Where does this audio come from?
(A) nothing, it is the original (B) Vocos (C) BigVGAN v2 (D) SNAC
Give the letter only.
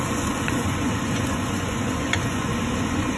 B